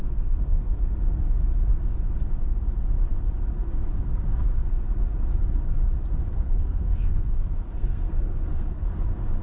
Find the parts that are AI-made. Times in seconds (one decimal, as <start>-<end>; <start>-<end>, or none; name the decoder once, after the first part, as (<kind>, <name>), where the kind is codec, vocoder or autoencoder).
0.0-1.2 (codec, SNAC); 4.1-4.8; 6.3-8.8